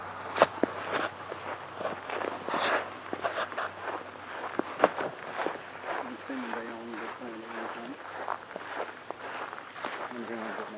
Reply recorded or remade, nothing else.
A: recorded